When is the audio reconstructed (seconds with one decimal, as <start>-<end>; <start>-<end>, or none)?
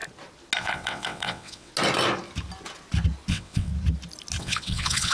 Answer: 0.6-1.7; 3.3-3.7; 4.4-5.1